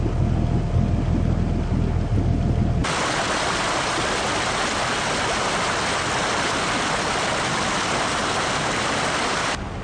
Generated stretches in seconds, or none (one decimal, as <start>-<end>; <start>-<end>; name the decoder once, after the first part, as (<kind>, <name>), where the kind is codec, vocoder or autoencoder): 2.8-4.5 (vocoder, BigVGAN v2)